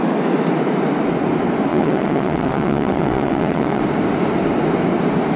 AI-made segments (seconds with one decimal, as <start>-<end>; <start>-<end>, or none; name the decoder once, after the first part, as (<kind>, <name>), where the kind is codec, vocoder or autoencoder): 1.7-3.8 (vocoder, WaveNeXt)